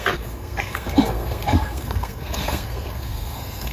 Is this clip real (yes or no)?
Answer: no